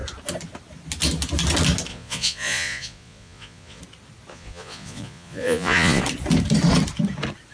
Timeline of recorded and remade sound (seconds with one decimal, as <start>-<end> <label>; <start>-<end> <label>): 0.0-1.9 recorded; 1.9-3.8 remade; 3.8-4.3 recorded; 4.3-6.0 remade; 6.0-7.5 recorded